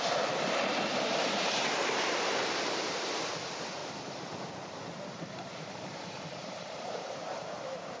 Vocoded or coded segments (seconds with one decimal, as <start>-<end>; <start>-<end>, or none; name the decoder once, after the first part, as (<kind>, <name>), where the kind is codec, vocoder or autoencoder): 0.0-3.8 (vocoder, BigVGAN v2); 5.0-8.0